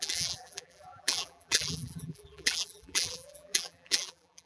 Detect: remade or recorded remade